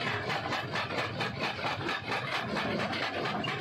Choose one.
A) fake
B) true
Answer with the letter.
B